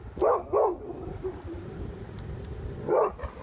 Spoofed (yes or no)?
no